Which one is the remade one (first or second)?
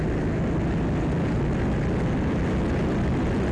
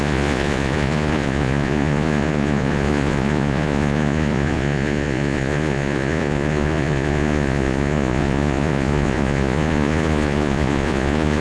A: second